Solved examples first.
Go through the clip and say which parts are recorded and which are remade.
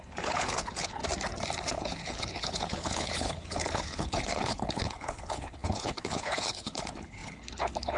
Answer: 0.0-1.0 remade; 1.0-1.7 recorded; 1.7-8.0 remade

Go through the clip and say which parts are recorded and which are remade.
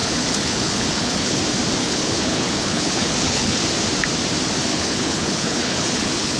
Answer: 0.0-1.4 remade; 1.4-1.8 recorded; 1.8-3.6 remade; 3.6-4.7 recorded; 4.7-6.4 remade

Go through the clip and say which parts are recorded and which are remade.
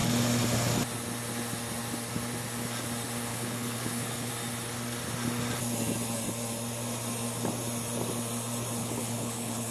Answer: 0.0-3.3 recorded; 3.3-4.3 remade; 4.3-8.8 recorded; 8.8-9.7 remade